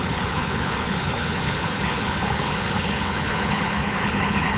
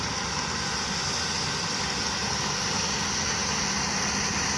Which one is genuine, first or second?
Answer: second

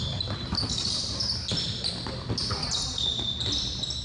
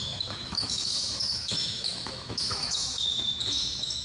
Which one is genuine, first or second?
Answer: first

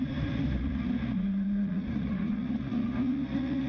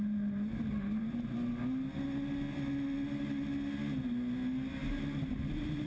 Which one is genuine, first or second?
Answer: second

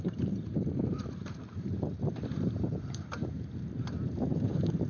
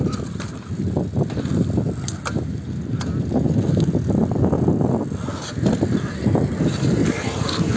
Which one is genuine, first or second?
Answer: second